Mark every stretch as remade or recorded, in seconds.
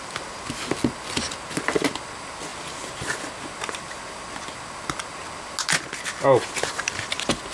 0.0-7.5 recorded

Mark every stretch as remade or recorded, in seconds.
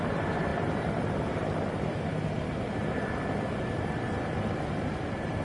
0.0-0.5 remade; 0.5-3.6 recorded; 3.6-5.4 remade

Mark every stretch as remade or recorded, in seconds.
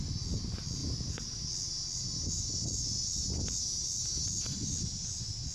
0.0-5.5 recorded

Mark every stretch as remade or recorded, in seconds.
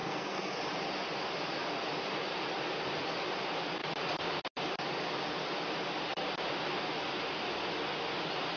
0.0-0.6 remade; 0.6-8.6 recorded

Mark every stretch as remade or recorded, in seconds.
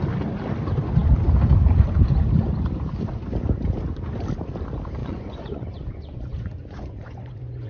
0.0-5.0 recorded; 5.0-7.7 remade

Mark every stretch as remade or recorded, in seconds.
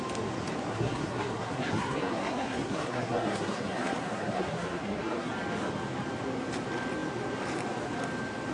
0.0-0.7 recorded; 0.7-5.3 remade; 5.3-8.5 recorded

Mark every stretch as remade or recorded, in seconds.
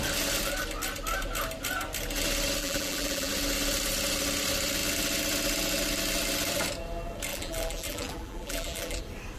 0.0-2.6 recorded; 2.6-3.3 remade; 3.3-7.3 recorded; 7.3-9.0 remade; 9.0-9.4 recorded